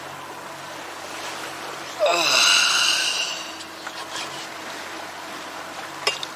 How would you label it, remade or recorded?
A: recorded